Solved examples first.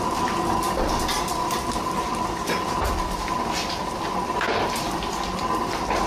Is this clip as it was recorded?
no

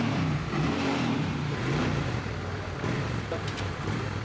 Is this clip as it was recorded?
no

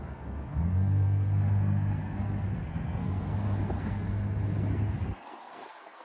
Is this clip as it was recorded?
no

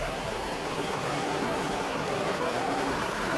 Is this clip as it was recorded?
no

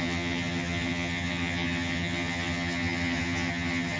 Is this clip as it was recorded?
no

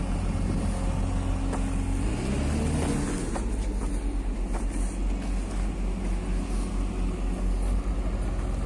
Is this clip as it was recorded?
yes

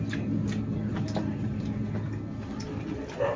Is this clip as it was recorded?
yes